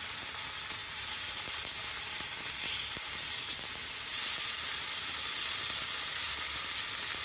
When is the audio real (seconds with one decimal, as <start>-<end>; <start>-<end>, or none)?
0.0-0.8; 1.4-7.2